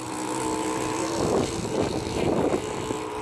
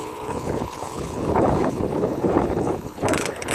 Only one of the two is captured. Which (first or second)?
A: first